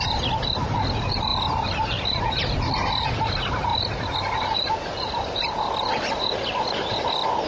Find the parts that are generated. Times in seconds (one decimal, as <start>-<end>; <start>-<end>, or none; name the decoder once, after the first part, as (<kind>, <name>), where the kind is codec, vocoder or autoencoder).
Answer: 1.3-3.1 (vocoder, BigVGAN v2); 3.7-5.4